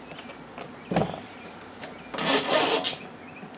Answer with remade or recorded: recorded